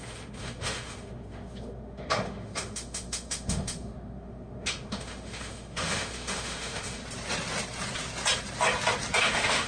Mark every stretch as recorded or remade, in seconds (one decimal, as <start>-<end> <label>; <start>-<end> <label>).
0.0-7.0 remade; 7.0-9.2 recorded; 9.2-9.7 remade